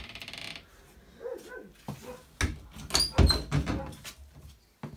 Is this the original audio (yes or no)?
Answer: yes